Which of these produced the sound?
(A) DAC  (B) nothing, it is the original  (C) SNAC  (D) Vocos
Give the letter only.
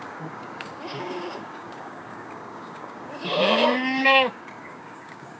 A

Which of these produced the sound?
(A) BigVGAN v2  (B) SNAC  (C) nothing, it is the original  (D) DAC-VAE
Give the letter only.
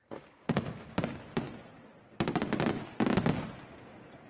C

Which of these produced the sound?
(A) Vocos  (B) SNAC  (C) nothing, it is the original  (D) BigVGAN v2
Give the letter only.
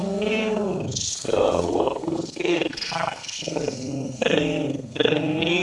B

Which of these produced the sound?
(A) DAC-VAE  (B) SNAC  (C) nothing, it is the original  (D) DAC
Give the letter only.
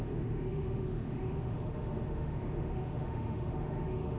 A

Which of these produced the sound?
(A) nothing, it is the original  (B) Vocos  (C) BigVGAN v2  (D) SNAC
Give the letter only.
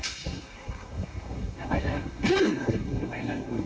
D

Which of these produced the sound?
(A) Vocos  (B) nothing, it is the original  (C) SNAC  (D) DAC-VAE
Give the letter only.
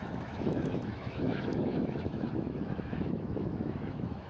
D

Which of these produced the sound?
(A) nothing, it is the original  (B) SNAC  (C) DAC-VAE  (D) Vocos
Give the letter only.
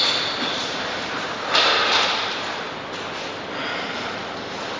A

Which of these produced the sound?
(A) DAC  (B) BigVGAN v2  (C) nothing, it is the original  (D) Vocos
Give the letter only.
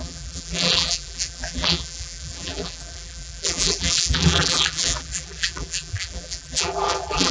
B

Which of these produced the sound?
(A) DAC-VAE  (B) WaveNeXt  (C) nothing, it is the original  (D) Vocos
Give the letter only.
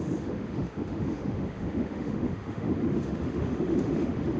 A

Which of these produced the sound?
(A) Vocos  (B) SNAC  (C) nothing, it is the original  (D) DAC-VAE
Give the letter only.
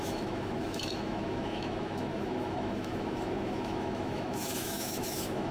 D